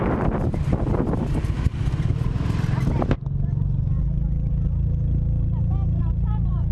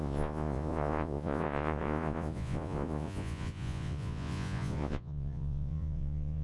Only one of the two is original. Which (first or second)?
first